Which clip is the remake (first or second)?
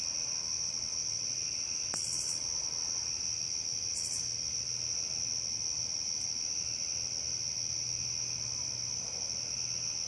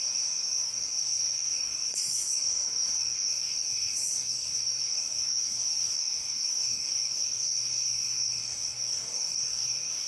second